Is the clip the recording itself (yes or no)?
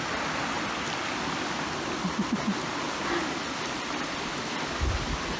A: yes